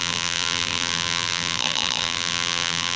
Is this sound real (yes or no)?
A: no